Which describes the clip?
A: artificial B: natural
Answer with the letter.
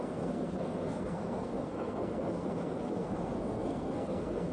A